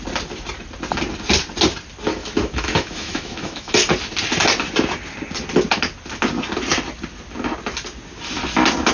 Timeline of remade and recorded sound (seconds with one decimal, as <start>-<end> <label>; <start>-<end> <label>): 0.0-2.2 recorded; 2.2-3.7 remade; 3.7-8.9 recorded